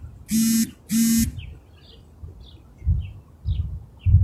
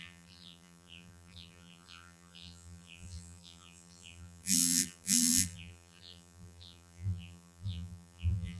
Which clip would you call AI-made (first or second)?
second